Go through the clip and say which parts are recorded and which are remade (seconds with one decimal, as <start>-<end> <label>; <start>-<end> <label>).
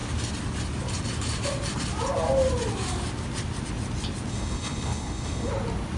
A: 0.0-4.3 recorded; 4.3-5.5 remade; 5.5-6.0 recorded